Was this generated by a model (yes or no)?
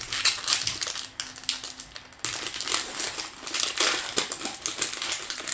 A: no